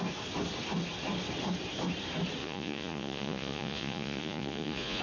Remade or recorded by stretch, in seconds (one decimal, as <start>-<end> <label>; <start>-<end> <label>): 0.0-2.4 recorded; 2.4-5.0 remade